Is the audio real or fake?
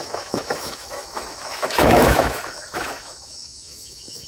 fake